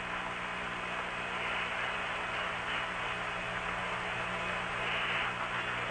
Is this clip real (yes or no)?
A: yes